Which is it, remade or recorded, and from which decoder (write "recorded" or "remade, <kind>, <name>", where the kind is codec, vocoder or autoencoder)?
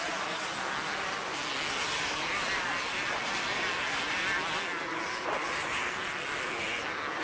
recorded